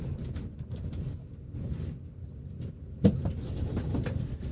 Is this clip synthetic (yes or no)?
no